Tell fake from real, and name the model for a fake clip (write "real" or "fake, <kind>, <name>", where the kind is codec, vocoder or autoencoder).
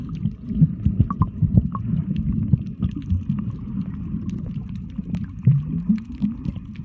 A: fake, vocoder, BigVGAN v2